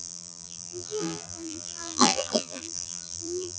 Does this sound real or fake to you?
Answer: fake